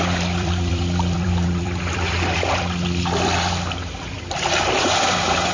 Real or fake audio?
fake